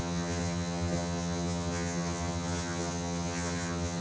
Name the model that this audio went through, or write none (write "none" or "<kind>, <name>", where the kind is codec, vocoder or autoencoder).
vocoder, HiFi-GAN